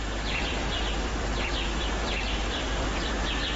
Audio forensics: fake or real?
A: fake